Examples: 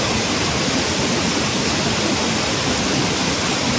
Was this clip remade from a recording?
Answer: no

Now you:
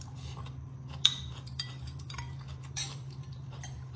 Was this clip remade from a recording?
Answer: yes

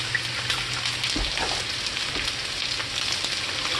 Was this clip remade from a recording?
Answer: no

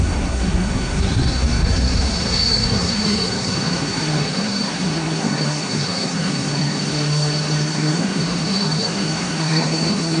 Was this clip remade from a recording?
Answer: yes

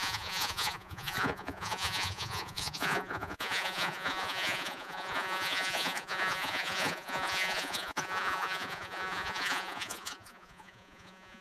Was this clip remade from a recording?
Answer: yes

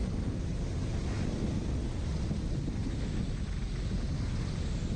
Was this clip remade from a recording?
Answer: no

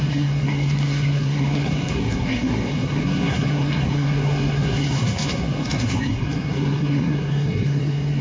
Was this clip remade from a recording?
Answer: yes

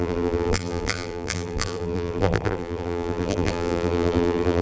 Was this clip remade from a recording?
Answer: yes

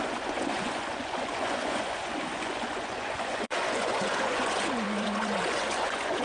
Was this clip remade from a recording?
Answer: yes